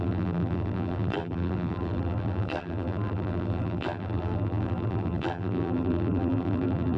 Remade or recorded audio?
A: remade